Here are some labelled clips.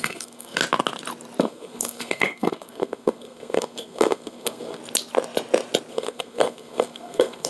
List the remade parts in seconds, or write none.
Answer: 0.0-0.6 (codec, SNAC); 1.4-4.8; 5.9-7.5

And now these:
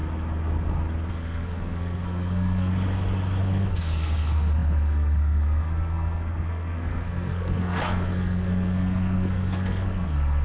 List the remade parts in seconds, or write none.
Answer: 1.1-2.7 (codec, SNAC); 3.4-10.4

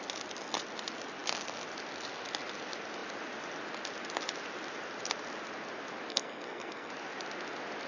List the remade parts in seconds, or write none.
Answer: 6.1-6.9 (codec, SNAC)

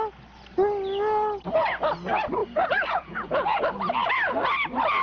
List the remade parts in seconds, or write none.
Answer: 2.4-3.6 (vocoder, Vocos)